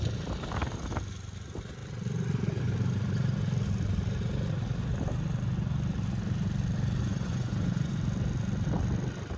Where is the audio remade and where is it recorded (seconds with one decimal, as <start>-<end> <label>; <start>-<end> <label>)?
0.0-7.1 recorded; 7.1-7.9 remade; 7.9-9.4 recorded